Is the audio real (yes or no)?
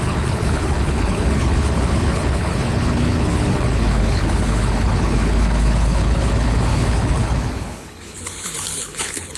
no